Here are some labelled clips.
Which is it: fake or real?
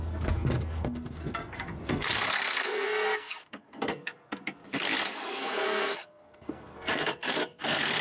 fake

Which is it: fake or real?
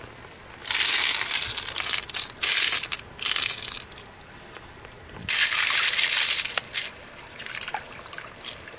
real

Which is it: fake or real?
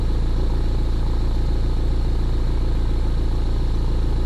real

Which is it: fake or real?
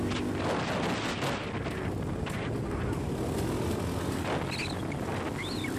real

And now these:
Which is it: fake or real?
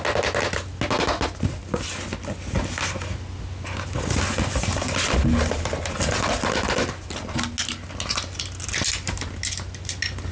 real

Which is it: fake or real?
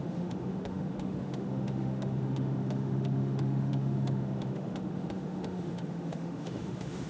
fake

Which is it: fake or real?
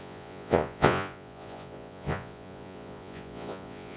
fake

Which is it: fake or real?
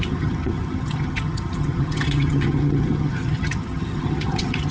fake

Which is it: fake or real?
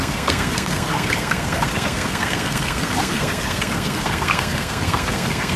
fake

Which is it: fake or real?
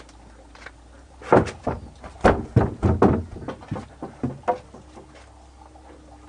real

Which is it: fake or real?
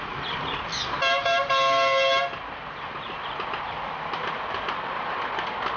real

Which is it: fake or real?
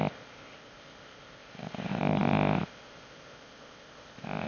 fake